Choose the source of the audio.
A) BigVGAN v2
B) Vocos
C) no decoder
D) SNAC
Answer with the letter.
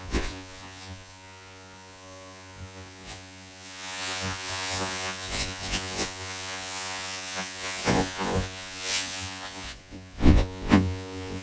B